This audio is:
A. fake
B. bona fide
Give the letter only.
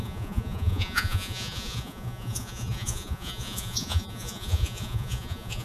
A